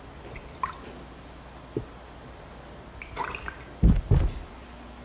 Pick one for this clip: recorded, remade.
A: recorded